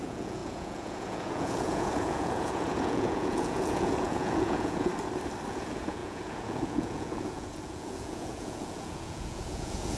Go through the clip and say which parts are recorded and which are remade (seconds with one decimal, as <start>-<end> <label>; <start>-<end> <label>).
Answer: 0.0-4.9 remade; 4.9-5.5 recorded; 5.5-10.0 remade